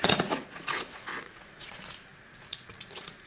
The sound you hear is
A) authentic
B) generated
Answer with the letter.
B